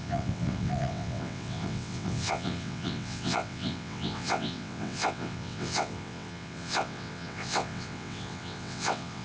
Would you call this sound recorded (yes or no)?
no